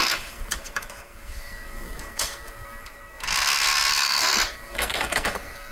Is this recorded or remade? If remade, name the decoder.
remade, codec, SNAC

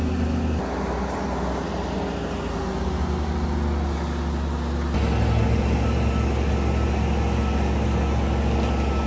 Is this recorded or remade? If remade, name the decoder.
recorded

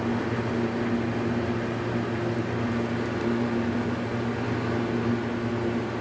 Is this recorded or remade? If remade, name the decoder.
recorded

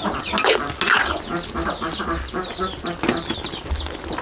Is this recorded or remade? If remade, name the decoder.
recorded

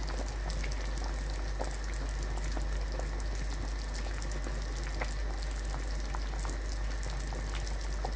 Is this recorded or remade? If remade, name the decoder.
recorded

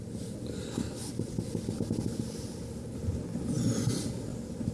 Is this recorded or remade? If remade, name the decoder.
recorded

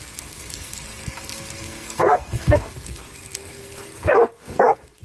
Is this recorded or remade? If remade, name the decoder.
remade, codec, SNAC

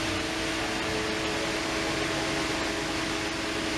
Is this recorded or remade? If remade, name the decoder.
recorded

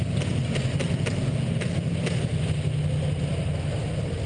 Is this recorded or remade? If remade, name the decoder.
recorded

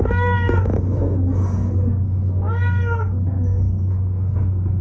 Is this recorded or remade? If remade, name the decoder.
remade, codec, SNAC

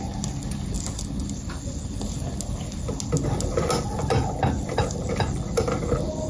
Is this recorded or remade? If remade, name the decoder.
recorded